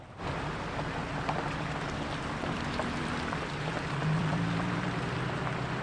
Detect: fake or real fake